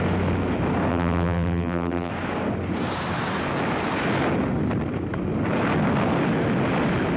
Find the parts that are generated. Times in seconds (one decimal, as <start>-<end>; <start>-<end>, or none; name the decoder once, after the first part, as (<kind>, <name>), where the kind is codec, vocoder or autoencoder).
0.9-2.1 (vocoder, BigVGAN v2)